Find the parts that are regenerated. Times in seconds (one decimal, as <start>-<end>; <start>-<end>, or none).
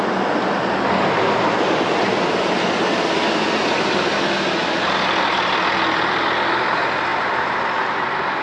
none